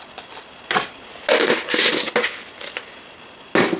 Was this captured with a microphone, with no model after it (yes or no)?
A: yes